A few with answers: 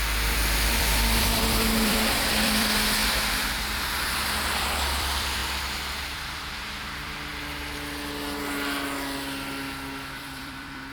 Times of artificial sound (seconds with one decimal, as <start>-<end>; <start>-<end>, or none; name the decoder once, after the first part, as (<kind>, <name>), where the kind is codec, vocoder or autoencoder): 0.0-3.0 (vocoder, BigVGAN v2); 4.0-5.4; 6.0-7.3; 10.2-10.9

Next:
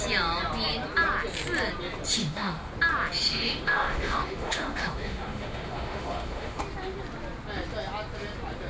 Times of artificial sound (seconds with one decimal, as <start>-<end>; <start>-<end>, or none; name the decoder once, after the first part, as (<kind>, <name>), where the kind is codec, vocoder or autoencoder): 2.2-2.7 (autoencoder, DAC-VAE); 3.3-6.6

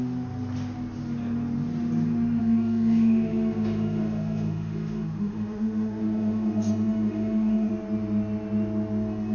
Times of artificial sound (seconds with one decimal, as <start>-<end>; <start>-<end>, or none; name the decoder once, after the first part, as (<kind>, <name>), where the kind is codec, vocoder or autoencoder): 2.4-7.7 (autoencoder, DAC-VAE)